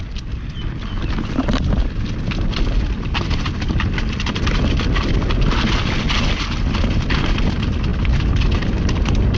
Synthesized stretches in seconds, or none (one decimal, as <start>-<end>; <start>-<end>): none